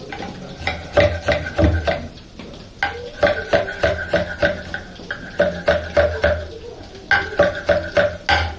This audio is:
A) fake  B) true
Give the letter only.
B